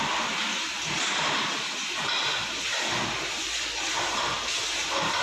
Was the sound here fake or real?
real